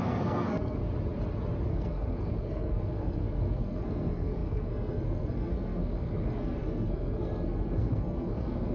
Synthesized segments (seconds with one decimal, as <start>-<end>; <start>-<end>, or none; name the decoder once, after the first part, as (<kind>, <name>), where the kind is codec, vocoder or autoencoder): 0.0-0.8 (codec, SNAC); 1.7-8.7